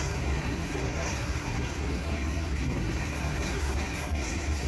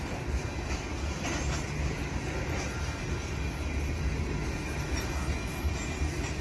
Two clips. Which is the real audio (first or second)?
second